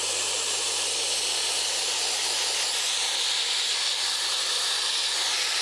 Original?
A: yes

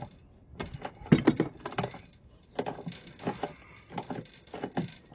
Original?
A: yes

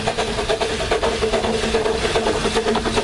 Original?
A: yes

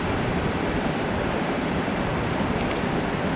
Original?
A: yes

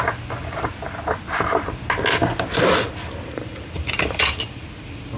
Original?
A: yes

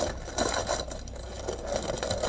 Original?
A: yes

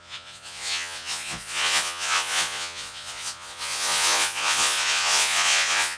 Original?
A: no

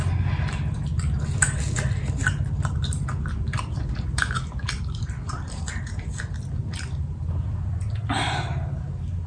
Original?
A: yes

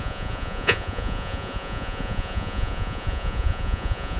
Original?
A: no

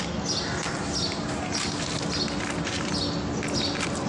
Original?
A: yes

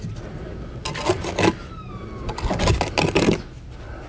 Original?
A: yes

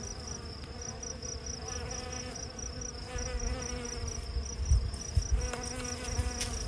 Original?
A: yes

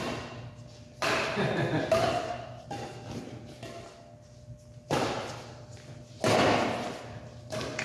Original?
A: yes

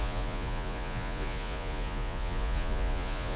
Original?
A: no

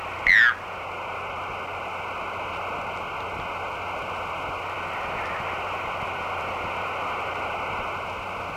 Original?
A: yes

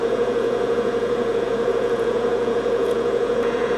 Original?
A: no